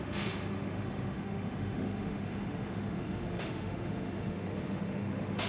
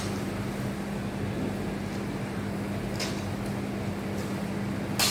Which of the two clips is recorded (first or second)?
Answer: second